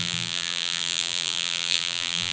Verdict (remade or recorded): remade